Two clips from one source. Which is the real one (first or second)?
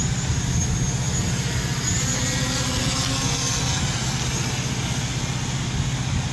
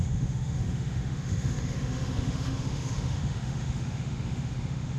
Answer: first